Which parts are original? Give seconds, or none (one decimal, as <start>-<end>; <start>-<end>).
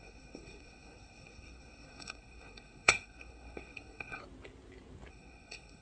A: 4.2-5.1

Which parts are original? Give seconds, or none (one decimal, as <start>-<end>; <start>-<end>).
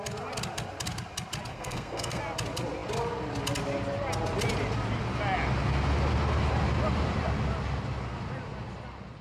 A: 0.0-1.5; 2.2-9.2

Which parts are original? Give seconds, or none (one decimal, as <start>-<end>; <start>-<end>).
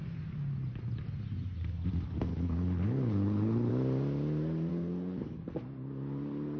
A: 0.0-2.3; 3.7-4.7; 5.6-6.6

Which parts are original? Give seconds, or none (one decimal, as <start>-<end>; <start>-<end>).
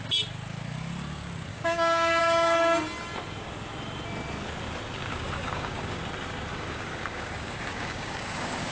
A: 0.0-1.5; 2.2-5.1; 6.0-6.5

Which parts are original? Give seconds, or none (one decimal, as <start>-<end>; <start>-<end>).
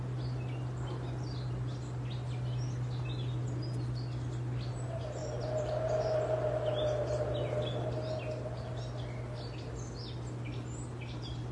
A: 0.0-11.5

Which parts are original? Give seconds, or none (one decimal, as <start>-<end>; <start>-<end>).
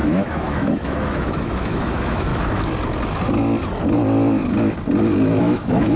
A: 2.3-5.4